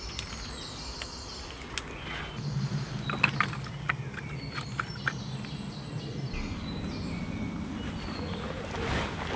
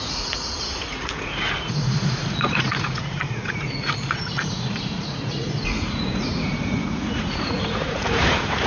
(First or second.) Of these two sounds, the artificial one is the second